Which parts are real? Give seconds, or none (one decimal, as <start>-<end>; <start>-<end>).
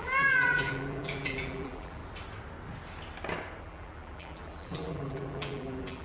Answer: 2.0-3.6